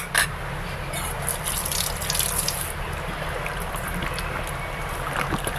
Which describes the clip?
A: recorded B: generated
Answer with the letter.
A